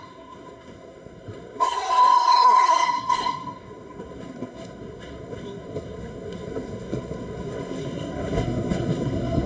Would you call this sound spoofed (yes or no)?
yes